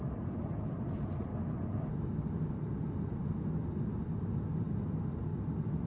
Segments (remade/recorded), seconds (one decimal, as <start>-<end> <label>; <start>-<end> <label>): 0.0-5.9 recorded